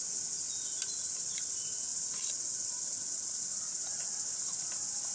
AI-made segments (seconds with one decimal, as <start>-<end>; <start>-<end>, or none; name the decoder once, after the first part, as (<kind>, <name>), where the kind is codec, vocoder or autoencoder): none